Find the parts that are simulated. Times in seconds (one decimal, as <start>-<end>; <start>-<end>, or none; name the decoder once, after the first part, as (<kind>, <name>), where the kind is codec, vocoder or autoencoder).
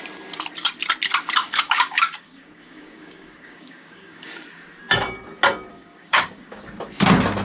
1.4-4.4 (codec, DAC); 5.7-6.6